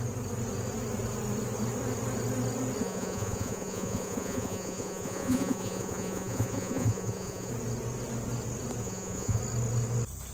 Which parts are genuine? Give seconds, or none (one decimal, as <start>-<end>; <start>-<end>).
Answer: 0.0-2.8; 7.5-8.8; 9.4-10.3